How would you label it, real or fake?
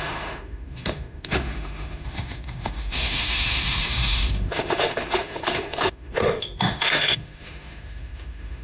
fake